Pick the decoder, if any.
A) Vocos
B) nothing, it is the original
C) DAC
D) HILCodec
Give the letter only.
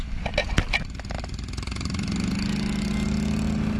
B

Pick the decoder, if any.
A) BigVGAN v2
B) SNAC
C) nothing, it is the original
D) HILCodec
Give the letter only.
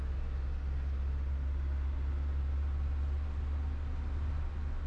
C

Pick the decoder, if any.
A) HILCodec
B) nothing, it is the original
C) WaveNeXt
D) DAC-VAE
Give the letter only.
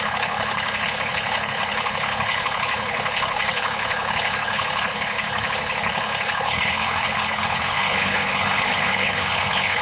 A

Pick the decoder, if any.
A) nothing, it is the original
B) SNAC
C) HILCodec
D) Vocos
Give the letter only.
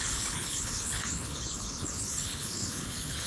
C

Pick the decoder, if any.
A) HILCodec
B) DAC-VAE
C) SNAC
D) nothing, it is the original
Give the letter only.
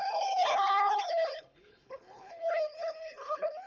A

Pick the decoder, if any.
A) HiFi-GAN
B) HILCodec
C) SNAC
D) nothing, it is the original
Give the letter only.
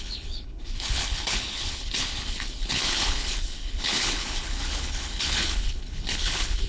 B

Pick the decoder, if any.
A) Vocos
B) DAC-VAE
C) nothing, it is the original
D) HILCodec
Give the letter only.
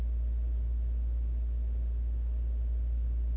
C